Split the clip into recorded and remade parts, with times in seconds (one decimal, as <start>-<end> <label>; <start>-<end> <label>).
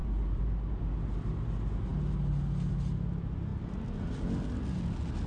0.0-0.8 remade; 0.8-5.3 recorded